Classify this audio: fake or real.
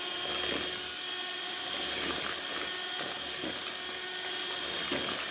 real